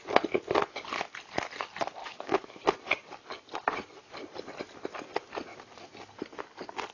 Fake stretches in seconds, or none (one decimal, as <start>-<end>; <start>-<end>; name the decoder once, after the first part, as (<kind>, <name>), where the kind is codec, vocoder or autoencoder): 2.0-2.6 (autoencoder, DAC-VAE)